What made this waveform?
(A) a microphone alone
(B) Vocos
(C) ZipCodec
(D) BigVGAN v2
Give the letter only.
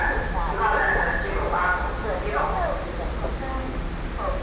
A